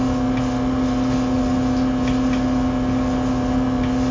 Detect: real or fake real